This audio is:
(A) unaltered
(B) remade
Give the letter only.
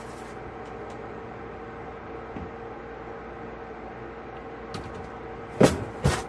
A